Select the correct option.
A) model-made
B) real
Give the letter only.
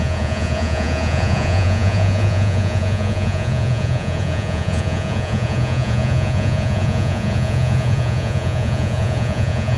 A